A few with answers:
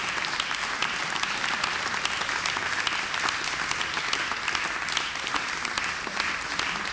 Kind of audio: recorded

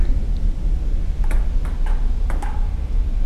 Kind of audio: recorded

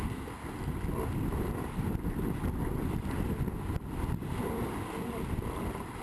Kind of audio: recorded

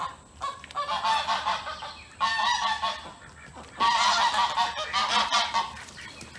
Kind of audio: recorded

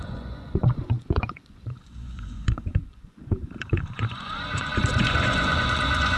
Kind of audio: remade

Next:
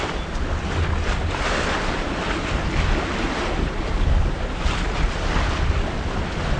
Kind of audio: recorded